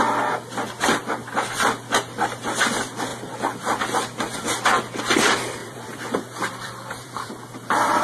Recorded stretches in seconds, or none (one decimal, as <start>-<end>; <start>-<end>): 0.0-5.6